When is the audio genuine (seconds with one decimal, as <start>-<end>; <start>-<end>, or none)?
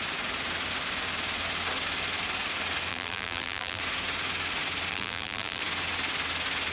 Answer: 0.0-2.9; 3.8-4.9; 5.6-6.7